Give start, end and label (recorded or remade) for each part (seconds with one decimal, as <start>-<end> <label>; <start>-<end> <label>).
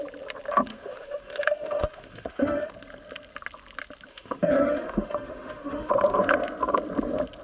0.0-0.7 recorded; 0.7-2.7 remade; 2.7-4.1 recorded; 4.1-5.9 remade; 5.9-7.4 recorded